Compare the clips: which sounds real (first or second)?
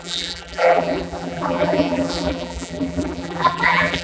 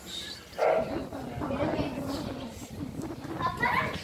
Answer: second